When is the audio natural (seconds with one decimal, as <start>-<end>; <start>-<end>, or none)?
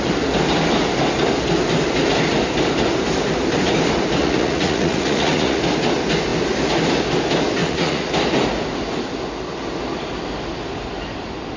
0.0-4.2; 5.6-7.6; 8.1-11.6